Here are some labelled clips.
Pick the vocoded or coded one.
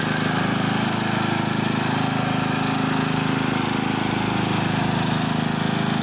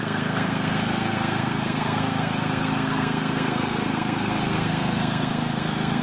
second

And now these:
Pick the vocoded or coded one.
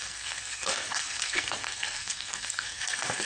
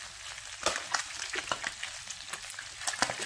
first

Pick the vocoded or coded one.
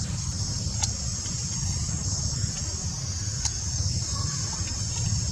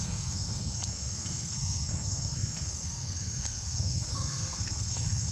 second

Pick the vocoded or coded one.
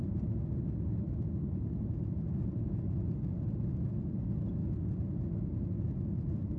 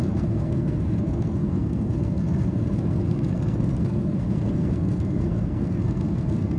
second